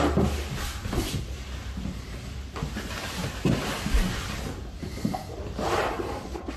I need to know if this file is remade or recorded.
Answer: recorded